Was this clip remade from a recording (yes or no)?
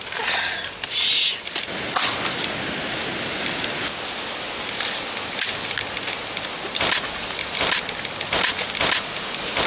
no